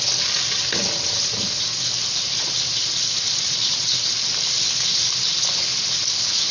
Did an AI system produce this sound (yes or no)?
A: no